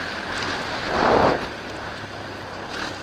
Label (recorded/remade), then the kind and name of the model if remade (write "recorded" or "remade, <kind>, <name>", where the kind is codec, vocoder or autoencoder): recorded